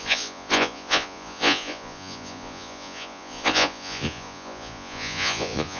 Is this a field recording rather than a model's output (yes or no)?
no